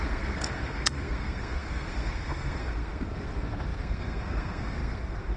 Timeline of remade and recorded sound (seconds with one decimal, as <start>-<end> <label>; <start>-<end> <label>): 0.0-5.4 remade